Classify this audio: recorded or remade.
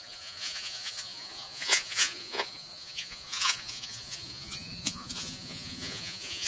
remade